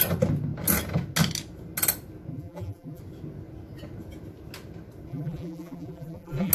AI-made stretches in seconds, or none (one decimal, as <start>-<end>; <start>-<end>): 2.3-3.0; 5.1-6.5